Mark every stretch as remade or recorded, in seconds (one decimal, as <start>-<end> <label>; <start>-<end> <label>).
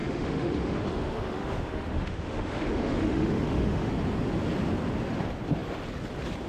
0.0-3.9 remade; 3.9-6.5 recorded